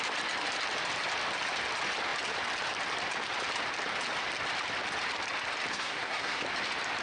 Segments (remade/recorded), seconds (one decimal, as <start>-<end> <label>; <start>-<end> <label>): 0.0-5.7 recorded; 5.7-6.4 remade; 6.4-7.0 recorded

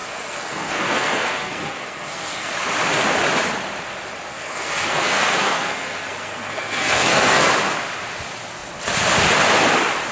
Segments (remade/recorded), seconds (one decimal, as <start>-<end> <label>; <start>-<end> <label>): 0.0-2.5 remade; 2.5-4.3 recorded; 4.3-7.5 remade; 7.5-10.1 recorded